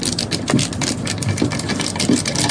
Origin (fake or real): real